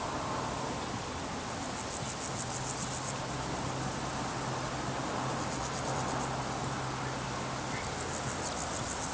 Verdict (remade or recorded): recorded